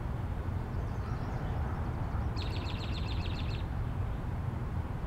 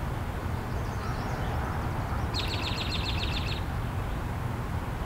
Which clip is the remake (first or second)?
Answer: first